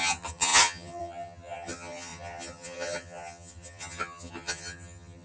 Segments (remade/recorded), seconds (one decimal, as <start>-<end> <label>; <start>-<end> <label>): 0.0-5.2 remade